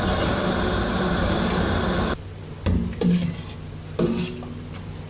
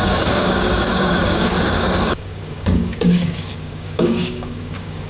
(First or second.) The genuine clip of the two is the first